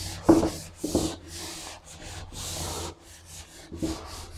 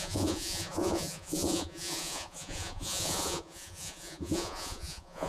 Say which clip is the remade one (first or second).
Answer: second